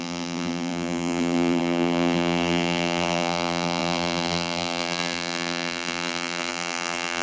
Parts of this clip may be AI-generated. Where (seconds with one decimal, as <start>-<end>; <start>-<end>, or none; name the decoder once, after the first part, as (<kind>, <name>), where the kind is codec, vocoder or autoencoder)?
0.0-7.2 (vocoder, BigVGAN v2)